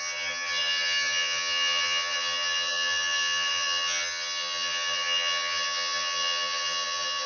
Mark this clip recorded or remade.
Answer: remade